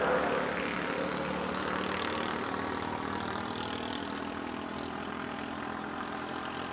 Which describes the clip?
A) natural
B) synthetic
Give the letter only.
A